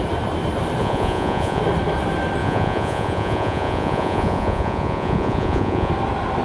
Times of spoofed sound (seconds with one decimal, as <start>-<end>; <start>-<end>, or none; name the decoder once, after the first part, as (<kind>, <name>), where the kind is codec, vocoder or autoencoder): 0.8-1.6 (vocoder, Vocos); 2.4-5.9